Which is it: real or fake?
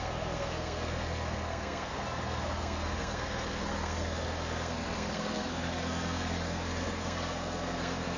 fake